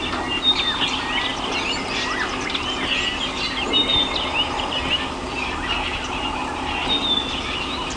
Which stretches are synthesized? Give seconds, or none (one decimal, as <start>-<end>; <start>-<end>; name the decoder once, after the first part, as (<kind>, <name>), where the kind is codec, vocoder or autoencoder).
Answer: none